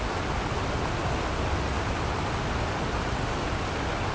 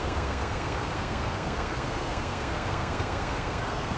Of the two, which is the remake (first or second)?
second